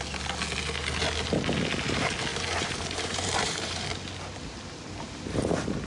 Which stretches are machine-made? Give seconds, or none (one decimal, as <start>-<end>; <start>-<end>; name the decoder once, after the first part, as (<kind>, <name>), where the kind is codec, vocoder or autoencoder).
2.3-3.8 (vocoder, BigVGAN v2)